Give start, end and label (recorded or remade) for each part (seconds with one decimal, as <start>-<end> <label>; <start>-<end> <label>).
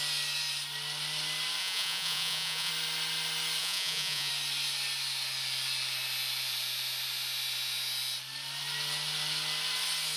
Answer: 0.0-1.6 recorded; 1.6-2.7 remade; 2.7-3.6 recorded; 3.6-4.3 remade; 4.3-10.2 recorded